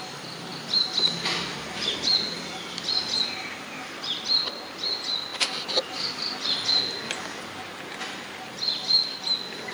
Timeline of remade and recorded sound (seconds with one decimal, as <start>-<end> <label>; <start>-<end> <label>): 0.0-9.7 recorded